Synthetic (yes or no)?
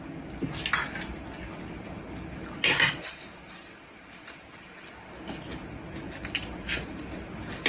no